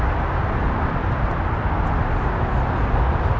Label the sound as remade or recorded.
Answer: recorded